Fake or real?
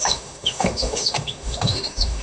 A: fake